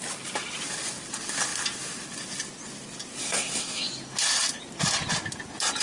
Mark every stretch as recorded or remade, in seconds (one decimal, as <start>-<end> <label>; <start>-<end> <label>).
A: 0.0-3.2 recorded; 3.2-3.9 remade; 3.9-5.8 recorded